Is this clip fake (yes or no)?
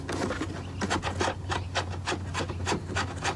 no